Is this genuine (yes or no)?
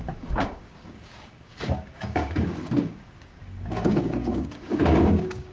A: no